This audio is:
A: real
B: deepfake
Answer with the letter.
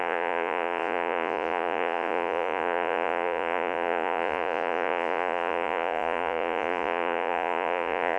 B